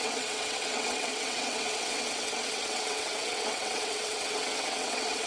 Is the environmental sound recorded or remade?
remade